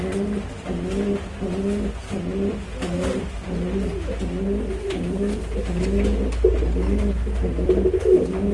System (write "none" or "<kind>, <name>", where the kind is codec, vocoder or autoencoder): none